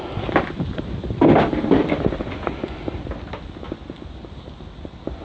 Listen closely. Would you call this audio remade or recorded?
recorded